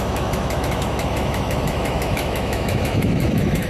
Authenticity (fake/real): fake